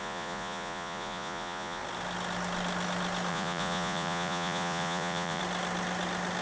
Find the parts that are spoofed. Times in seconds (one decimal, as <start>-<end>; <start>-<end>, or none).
0.0-1.8; 3.3-5.4